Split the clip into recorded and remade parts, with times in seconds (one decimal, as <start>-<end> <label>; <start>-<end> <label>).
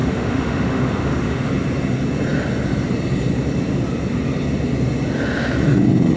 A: 0.0-1.5 remade; 1.5-6.2 recorded